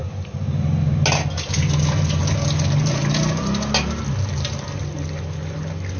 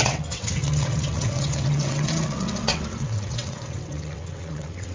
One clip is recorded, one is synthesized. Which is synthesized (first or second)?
second